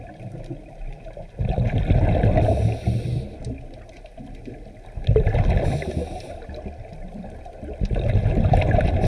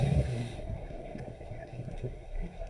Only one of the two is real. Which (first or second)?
first